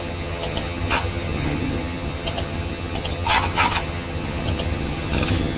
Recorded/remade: remade